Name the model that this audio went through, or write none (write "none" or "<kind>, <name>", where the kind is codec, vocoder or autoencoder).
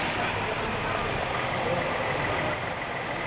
none